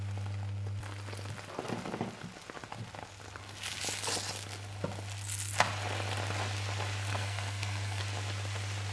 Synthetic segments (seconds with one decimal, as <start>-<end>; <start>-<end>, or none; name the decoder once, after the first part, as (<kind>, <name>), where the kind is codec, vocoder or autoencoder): 7.1-8.0 (codec, SNAC)